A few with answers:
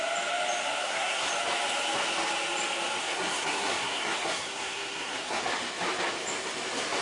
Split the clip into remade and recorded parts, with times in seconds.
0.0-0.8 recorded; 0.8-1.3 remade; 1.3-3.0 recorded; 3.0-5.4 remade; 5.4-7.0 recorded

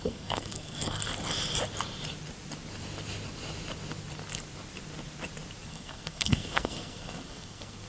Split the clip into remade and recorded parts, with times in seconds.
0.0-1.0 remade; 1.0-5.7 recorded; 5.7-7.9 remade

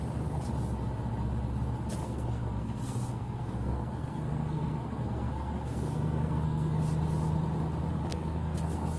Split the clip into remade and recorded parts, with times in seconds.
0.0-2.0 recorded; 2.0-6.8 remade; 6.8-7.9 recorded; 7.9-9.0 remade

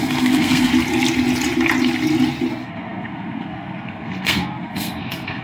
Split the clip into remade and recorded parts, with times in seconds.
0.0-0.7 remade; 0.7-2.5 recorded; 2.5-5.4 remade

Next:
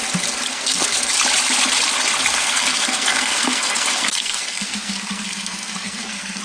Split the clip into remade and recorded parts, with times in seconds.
0.0-0.5 recorded; 0.5-1.1 remade; 1.1-2.3 recorded; 2.3-6.4 remade

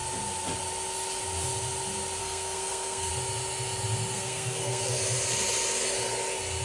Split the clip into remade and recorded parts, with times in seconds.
0.0-2.2 recorded; 2.2-3.1 remade; 3.1-4.1 recorded; 4.1-4.9 remade; 4.9-6.6 recorded

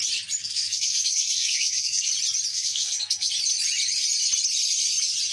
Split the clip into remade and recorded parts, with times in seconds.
0.0-0.4 recorded; 0.4-2.1 remade; 2.1-2.5 recorded; 2.5-3.3 remade; 3.3-5.3 recorded